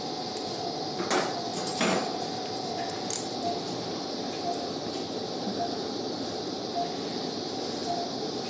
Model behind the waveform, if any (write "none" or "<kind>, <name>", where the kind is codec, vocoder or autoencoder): none